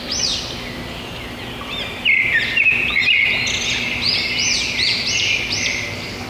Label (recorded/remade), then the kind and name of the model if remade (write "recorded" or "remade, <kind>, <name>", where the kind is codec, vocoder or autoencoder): recorded